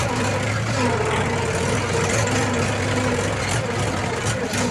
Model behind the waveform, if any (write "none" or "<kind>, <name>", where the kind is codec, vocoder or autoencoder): none